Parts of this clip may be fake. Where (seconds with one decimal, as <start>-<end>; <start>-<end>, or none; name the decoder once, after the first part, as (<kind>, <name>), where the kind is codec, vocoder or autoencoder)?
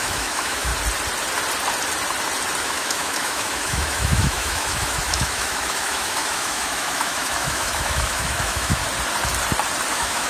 0.0-0.7 (autoencoder, DAC-VAE); 2.6-8.8; 9.9-10.3